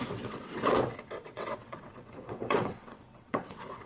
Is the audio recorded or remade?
remade